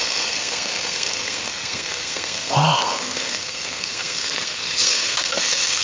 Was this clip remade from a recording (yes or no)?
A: yes